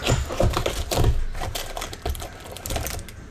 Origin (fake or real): fake